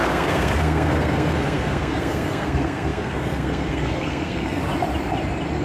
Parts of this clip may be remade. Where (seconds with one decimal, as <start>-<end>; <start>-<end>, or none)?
0.0-4.6